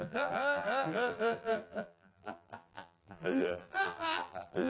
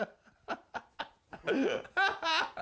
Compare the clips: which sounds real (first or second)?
second